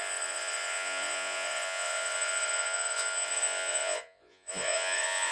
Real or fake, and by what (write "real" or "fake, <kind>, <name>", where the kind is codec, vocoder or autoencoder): fake, vocoder, Vocos